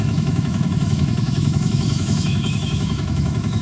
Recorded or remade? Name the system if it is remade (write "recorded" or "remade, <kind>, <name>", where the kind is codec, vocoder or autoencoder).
remade, autoencoder, DAC-VAE